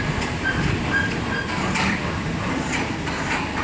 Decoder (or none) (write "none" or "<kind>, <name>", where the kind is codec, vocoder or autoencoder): none